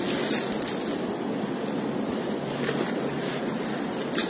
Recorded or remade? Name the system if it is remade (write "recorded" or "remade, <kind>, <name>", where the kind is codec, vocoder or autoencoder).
recorded